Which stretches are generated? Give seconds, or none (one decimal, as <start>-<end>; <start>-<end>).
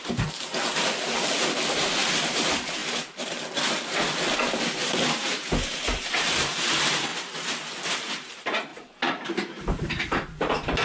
0.0-0.5; 2.2-2.8; 4.7-7.1; 7.9-10.8